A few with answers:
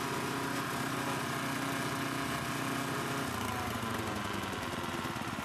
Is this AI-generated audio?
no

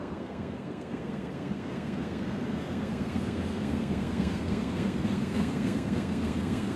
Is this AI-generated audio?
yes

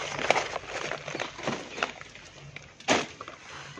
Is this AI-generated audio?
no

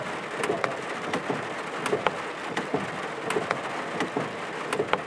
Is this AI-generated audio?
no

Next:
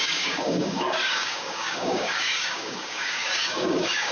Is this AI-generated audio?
yes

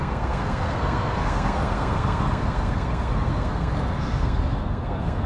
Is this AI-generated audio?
yes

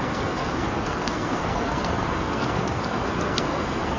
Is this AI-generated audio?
yes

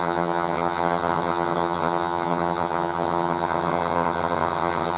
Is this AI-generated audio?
yes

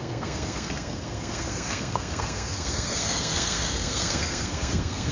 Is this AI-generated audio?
yes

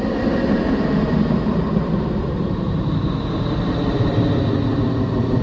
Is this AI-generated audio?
no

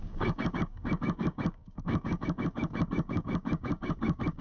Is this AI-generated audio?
yes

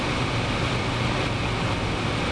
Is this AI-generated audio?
no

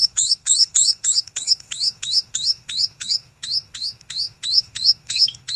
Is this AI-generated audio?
yes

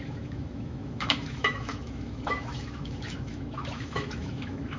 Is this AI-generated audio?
yes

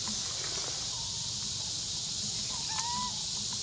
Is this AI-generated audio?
no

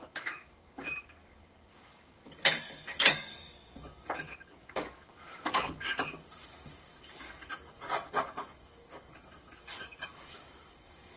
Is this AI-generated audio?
yes